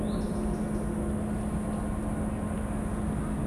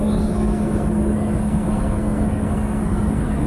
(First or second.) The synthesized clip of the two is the second